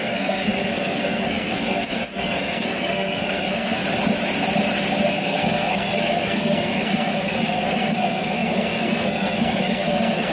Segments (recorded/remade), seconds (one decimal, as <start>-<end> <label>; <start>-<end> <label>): 0.0-3.8 remade; 3.8-5.1 recorded; 5.1-10.3 remade

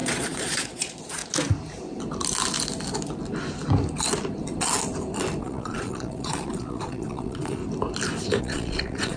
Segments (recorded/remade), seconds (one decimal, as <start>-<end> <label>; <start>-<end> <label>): 0.0-1.2 remade; 1.2-5.4 recorded; 5.4-7.6 remade; 7.6-8.4 recorded; 8.4-9.2 remade

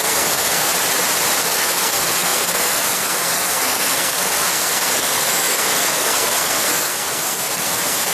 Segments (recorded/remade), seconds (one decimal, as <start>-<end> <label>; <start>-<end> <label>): 0.0-0.7 remade; 0.7-1.4 recorded; 1.4-8.1 remade

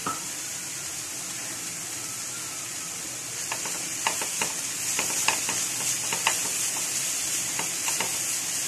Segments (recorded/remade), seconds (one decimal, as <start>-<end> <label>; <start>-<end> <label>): 0.0-2.1 remade; 2.1-2.7 recorded; 2.7-7.9 remade; 7.9-8.7 recorded

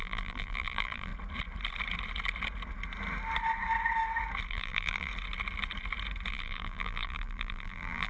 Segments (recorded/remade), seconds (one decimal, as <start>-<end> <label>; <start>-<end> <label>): 0.0-1.1 remade; 1.1-4.5 recorded; 4.5-5.1 remade; 5.1-6.3 recorded; 6.3-8.1 remade

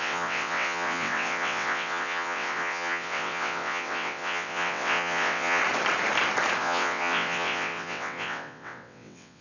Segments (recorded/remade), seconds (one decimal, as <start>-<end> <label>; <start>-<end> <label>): 0.0-5.6 remade; 5.6-6.6 recorded; 6.6-9.4 remade

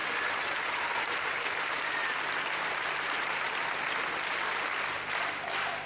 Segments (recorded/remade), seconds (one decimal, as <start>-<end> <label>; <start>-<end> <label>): 0.0-3.5 remade; 3.5-5.9 recorded